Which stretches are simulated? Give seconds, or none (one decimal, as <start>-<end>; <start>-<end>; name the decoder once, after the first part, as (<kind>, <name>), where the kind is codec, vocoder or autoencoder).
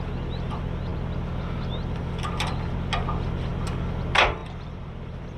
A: 4.4-5.4 (vocoder, BigVGAN v2)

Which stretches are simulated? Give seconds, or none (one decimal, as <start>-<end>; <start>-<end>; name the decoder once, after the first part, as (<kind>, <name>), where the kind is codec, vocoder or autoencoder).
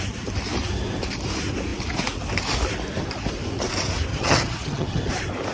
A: 4.1-5.1 (vocoder, HiFi-GAN)